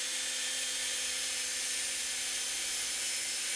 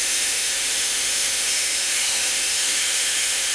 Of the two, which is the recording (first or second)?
first